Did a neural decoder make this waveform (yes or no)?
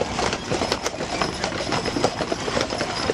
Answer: no